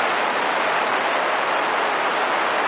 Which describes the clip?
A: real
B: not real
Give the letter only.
A